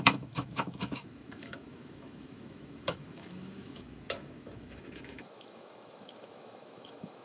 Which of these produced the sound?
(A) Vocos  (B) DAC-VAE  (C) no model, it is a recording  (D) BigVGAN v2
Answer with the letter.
B